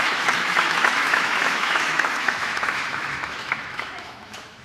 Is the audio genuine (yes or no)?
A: no